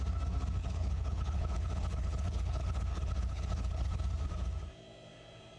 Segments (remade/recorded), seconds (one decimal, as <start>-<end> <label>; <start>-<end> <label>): 0.0-0.6 recorded; 0.6-4.0 remade; 4.0-5.6 recorded